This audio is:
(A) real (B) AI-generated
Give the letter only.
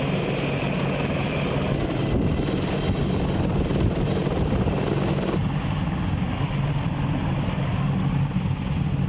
A